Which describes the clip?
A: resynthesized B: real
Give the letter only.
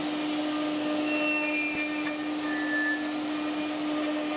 B